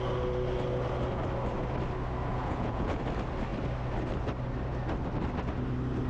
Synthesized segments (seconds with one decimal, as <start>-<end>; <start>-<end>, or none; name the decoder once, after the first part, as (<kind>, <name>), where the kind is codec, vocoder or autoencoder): 2.3-3.0 (vocoder, Vocos)